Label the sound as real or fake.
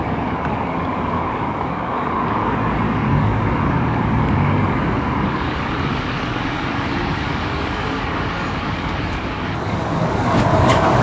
fake